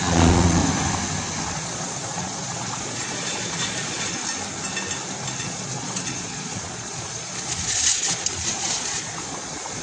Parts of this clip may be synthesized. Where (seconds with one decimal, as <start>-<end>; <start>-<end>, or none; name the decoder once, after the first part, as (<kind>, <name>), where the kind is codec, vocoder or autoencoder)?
0.0-0.6 (vocoder, Vocos); 1.5-4.2; 5.4-9.8